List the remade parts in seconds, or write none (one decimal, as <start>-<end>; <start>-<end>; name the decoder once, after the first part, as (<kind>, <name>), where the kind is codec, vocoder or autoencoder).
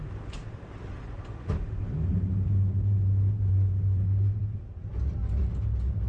1.0-1.5 (vocoder, Vocos)